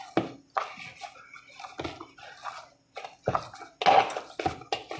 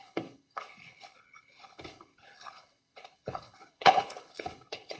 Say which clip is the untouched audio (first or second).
first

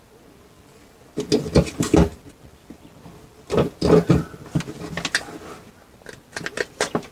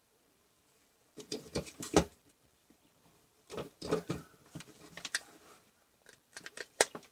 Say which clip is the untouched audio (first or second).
first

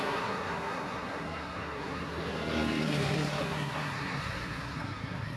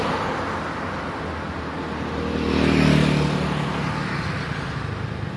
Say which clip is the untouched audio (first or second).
second